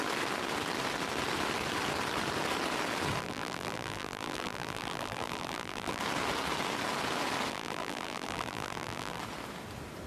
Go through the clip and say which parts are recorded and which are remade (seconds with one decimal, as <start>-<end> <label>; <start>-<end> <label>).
0.0-3.2 recorded; 3.2-6.0 remade; 6.0-7.5 recorded; 7.5-9.2 remade; 9.2-10.1 recorded